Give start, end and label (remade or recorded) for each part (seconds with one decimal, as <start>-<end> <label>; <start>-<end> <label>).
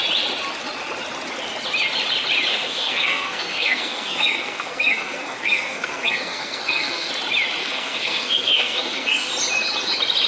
0.0-2.5 recorded; 2.5-7.1 remade; 7.1-7.6 recorded; 7.6-9.3 remade; 9.3-10.3 recorded